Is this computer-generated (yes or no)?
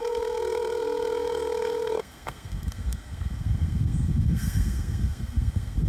yes